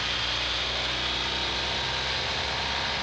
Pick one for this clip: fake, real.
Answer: real